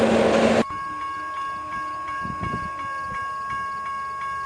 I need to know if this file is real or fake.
real